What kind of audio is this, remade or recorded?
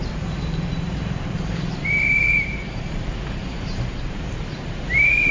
remade